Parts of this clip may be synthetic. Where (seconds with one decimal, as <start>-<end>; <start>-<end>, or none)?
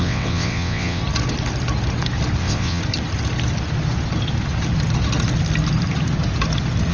0.0-1.0; 2.4-2.8